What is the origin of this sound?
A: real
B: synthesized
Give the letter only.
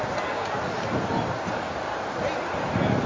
A